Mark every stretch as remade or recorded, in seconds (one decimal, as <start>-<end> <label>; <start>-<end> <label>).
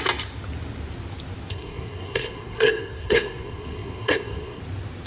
0.0-1.5 recorded; 1.5-4.6 remade; 4.6-5.1 recorded